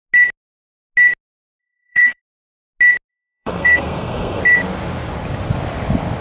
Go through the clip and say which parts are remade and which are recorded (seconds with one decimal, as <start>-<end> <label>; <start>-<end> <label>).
0.0-1.6 recorded; 1.6-2.2 remade; 2.2-3.1 recorded; 3.1-4.4 remade; 4.4-6.2 recorded